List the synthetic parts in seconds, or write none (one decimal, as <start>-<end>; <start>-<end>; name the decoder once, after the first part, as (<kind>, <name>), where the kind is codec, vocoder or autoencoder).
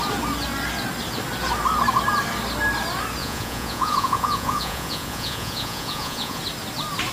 3.2-6.4 (vocoder, Vocos)